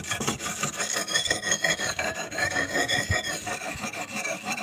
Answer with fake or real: fake